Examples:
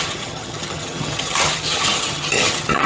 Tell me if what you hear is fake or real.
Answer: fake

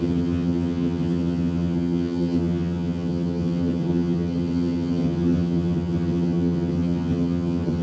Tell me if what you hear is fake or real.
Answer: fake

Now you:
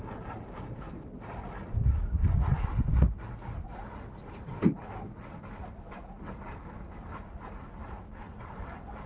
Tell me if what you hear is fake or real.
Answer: real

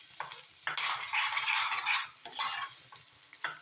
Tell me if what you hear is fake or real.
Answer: real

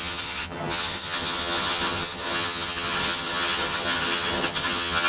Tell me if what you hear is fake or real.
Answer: fake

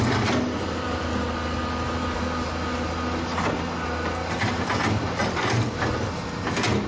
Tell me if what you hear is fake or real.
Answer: real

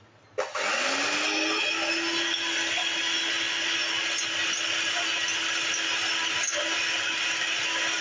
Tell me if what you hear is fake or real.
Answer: real